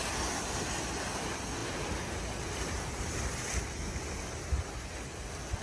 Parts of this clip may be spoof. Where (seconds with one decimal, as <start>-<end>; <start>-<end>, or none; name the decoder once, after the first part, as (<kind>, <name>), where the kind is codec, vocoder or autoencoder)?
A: none